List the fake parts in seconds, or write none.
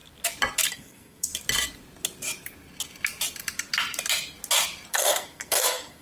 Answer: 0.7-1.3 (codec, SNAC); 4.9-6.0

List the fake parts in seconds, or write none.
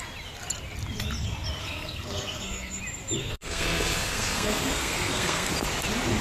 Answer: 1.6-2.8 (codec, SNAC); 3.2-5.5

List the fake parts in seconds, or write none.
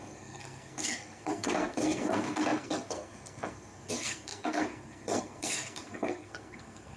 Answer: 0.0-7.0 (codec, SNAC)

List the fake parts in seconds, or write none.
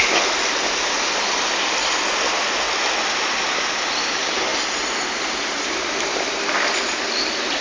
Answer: none